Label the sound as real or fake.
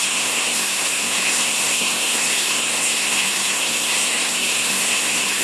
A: fake